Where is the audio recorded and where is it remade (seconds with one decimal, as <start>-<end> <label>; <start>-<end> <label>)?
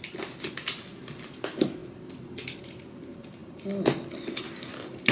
0.0-5.1 recorded